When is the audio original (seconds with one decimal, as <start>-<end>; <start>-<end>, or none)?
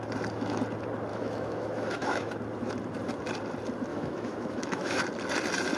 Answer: 0.0-1.1; 2.3-3.9; 5.0-5.8